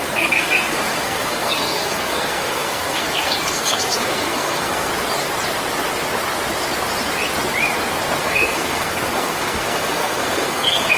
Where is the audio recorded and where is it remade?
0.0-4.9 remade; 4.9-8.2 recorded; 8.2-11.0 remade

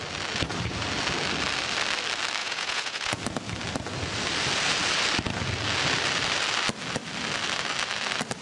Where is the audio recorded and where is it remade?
0.0-2.4 recorded; 2.4-3.2 remade; 3.2-8.4 recorded

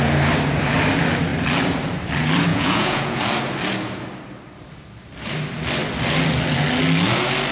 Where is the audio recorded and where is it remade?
0.0-2.5 recorded; 2.5-3.2 remade; 3.2-7.5 recorded

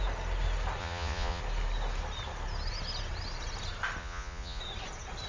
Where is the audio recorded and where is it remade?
0.0-0.8 recorded; 0.8-1.4 remade; 1.4-4.0 recorded; 4.0-4.6 remade; 4.6-5.3 recorded

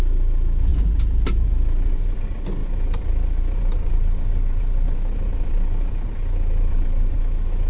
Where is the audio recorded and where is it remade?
0.0-0.7 recorded; 0.7-2.2 remade; 2.2-2.6 recorded; 2.6-7.2 remade; 7.2-7.7 recorded

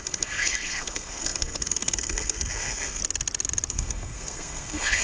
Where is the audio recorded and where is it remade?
0.0-3.0 remade; 3.0-3.7 recorded; 3.7-5.0 remade

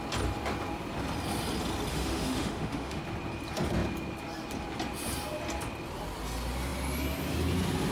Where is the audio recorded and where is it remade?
0.0-1.9 recorded; 1.9-3.0 remade; 3.0-7.9 recorded